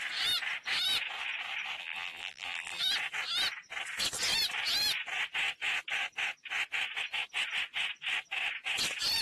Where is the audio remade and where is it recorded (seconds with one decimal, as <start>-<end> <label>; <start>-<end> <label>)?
0.0-1.8 recorded; 1.8-2.8 remade; 2.8-9.2 recorded